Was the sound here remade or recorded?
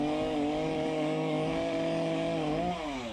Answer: remade